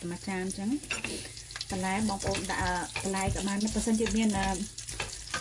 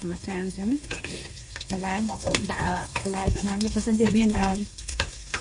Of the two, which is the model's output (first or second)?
second